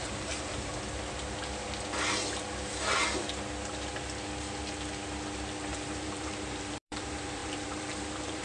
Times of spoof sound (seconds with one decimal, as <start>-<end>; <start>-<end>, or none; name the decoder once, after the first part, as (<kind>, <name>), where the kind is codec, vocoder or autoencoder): 0.0-0.7 (vocoder, BigVGAN v2); 5.7-8.4

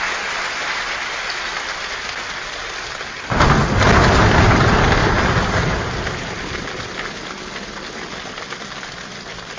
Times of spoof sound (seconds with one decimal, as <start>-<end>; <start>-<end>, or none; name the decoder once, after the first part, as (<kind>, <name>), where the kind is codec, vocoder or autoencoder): 5.0-5.6 (vocoder, BigVGAN v2)